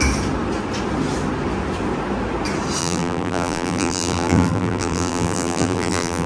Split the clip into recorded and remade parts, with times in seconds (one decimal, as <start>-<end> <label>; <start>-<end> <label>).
0.0-2.8 recorded; 2.8-6.3 remade